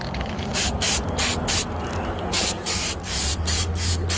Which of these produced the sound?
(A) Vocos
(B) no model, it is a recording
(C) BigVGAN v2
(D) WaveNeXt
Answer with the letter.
B